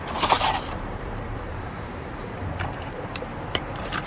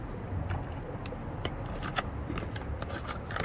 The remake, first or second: first